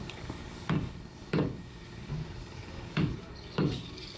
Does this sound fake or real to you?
fake